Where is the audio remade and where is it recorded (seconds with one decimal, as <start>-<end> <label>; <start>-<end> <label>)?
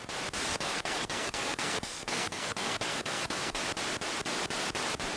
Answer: 0.0-0.5 recorded; 0.5-3.6 remade; 3.6-5.2 recorded